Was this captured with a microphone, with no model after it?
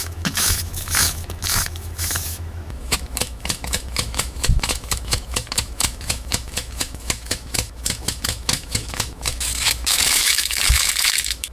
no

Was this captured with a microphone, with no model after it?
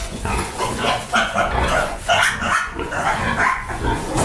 no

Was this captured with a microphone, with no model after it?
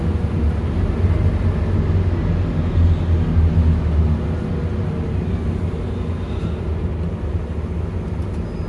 yes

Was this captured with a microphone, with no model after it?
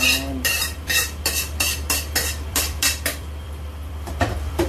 no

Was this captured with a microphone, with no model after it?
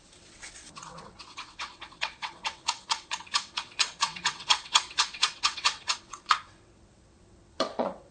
no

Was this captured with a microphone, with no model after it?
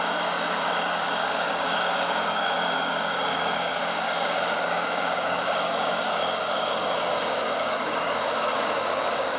no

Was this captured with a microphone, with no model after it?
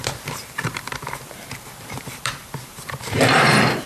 no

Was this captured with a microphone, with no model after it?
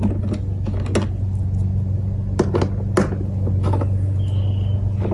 yes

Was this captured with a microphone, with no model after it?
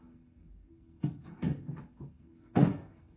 no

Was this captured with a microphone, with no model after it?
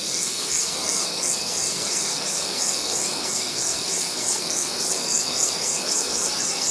no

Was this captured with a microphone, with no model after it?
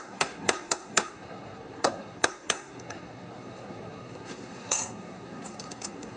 no